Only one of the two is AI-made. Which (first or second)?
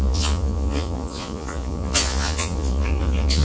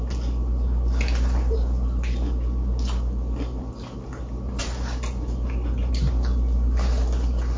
first